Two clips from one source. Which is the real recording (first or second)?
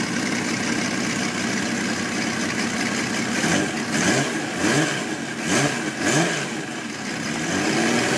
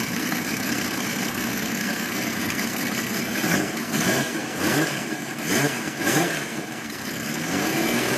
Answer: first